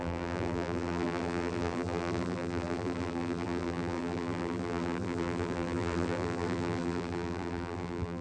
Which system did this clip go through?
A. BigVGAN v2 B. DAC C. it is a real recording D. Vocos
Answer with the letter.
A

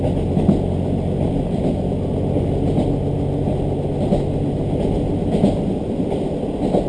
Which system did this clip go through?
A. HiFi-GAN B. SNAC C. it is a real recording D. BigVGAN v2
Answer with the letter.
C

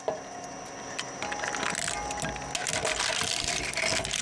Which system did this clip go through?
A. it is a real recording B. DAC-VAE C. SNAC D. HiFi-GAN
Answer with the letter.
A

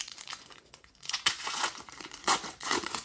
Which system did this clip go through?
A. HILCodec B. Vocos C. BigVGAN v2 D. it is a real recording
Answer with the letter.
B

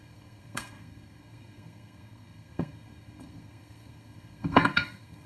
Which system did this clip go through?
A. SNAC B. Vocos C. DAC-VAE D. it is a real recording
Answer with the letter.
A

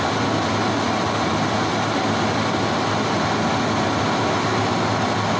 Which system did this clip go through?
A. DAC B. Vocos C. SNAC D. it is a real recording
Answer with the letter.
D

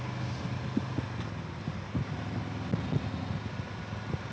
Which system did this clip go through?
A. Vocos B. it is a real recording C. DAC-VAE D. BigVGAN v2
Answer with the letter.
B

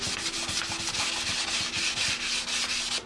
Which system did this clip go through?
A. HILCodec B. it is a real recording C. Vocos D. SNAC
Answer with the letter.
B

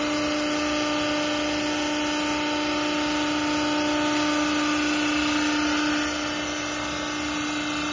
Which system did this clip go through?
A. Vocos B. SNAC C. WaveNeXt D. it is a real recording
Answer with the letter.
D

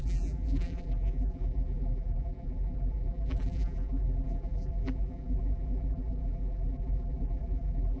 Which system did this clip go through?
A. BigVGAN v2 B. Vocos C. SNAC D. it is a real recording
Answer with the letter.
A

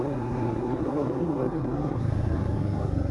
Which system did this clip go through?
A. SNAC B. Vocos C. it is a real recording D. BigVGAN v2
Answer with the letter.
A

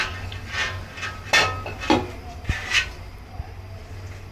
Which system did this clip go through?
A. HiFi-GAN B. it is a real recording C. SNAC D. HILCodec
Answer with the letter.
B